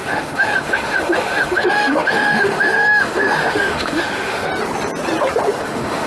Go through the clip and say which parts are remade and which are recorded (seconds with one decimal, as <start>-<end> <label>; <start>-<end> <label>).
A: 0.0-4.5 remade; 4.5-5.6 recorded; 5.6-6.1 remade